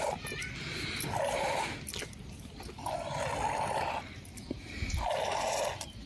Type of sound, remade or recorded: recorded